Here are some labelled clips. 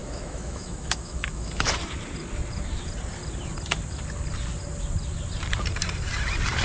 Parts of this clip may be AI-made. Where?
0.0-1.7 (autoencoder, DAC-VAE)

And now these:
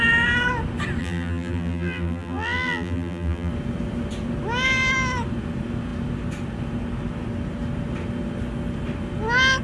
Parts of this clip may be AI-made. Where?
1.0-3.5 (vocoder, BigVGAN v2)

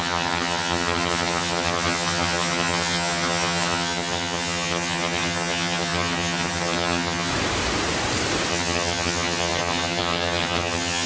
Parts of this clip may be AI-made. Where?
0.0-7.3 (vocoder, HiFi-GAN); 8.5-11.1

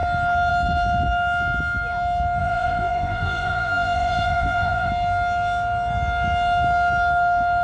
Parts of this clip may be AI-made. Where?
2.4-4.9 (vocoder, Vocos)

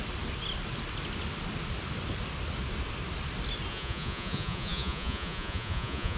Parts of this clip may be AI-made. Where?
3.7-6.2 (vocoder, Vocos)

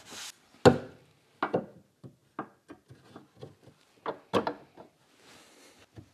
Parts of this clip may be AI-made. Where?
none

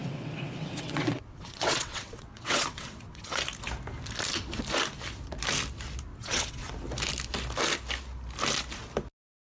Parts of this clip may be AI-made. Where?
0.0-3.4 (vocoder, WaveNeXt); 6.1-6.7